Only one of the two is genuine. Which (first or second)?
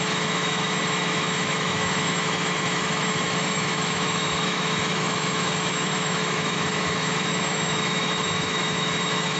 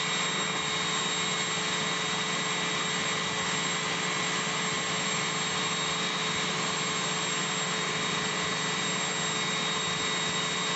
second